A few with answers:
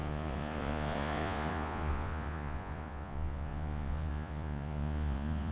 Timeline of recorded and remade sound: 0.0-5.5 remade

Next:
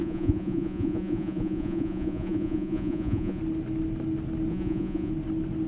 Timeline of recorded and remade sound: 0.0-3.4 remade; 3.4-4.5 recorded; 4.5-5.1 remade; 5.1-5.7 recorded

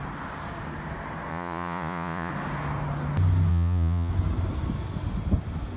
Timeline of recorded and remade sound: 0.0-1.3 recorded; 1.3-2.3 remade; 2.3-3.5 recorded; 3.5-4.1 remade; 4.1-5.8 recorded

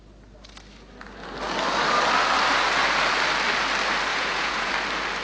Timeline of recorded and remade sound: 0.0-4.1 recorded; 4.1-4.7 remade; 4.7-5.2 recorded